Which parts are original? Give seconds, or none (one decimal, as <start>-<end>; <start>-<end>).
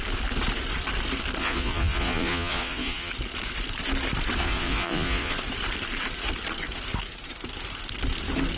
0.0-1.4; 3.1-4.4; 5.3-8.6